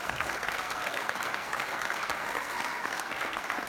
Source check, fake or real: fake